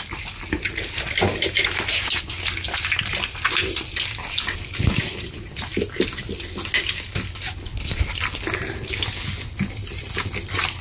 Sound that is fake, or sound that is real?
real